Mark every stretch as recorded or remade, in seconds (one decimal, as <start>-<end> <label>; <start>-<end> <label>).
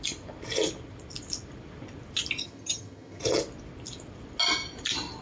0.0-2.4 recorded; 2.4-3.2 remade; 3.2-5.2 recorded